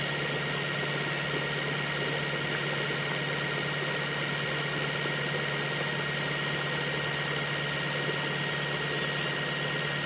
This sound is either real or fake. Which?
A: real